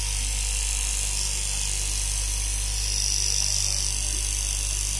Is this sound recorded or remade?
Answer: recorded